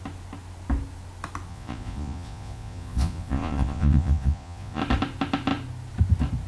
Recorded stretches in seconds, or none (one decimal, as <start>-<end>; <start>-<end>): 0.0-1.5; 4.8-6.5